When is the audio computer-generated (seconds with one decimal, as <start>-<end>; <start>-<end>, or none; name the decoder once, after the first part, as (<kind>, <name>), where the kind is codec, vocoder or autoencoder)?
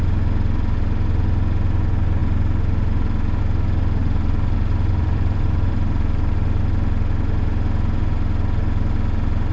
4.0-6.6 (vocoder, BigVGAN v2)